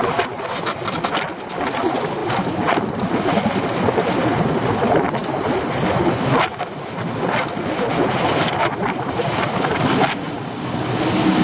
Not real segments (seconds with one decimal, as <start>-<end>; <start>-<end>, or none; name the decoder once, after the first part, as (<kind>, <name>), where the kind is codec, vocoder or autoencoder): 2.2-4.4 (vocoder, BigVGAN v2); 5.2-8.3

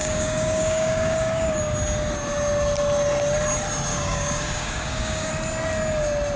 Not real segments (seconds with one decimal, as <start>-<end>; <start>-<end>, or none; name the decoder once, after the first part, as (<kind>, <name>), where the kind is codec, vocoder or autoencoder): 0.0-1.6 (codec, DAC); 3.9-5.3

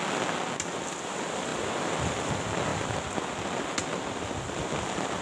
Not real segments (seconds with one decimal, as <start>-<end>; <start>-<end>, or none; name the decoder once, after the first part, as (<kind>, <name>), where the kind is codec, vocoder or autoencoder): none

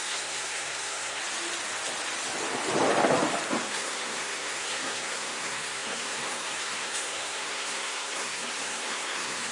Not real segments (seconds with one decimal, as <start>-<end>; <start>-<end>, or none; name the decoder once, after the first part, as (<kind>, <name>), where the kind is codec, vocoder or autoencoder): 0.0-1.2 (codec, SNAC); 3.6-9.5

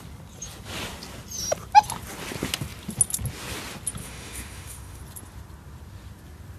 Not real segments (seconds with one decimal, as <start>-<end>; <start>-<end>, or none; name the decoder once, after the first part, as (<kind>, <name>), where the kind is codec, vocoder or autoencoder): 4.0-5.0 (autoencoder, DAC-VAE)

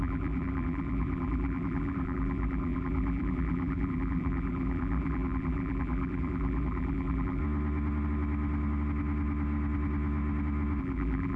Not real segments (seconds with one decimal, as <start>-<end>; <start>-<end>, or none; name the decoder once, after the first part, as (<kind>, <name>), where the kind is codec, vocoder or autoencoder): 0.0-7.4 (vocoder, BigVGAN v2); 10.8-11.4